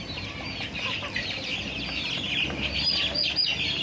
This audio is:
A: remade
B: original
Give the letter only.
B